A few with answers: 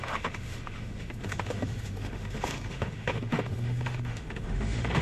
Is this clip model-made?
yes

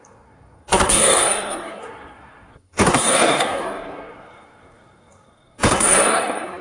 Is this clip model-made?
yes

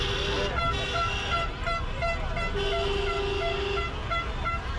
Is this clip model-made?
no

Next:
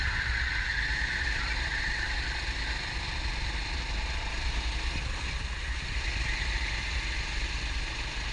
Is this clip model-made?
no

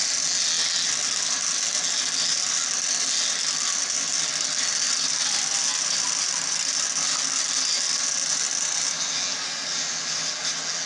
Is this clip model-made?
no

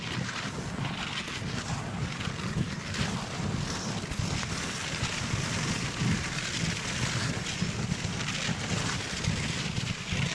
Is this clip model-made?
no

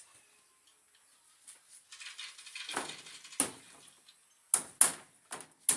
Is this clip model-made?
no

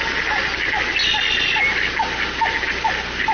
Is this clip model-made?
no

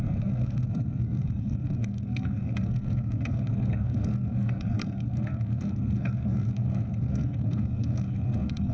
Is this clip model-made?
yes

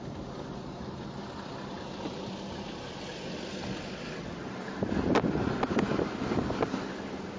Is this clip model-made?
no